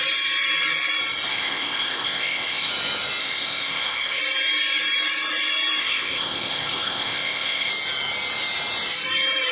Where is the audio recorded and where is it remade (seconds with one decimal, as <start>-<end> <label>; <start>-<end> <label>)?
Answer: 0.0-1.3 recorded; 1.3-2.7 remade; 2.7-3.2 recorded; 3.2-4.2 remade; 4.2-5.8 recorded; 5.8-7.7 remade; 7.7-9.5 recorded